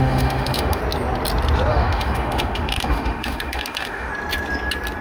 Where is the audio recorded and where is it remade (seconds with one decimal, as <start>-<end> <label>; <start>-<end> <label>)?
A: 0.0-0.8 remade; 0.8-1.7 recorded; 1.7-4.1 remade; 4.1-5.0 recorded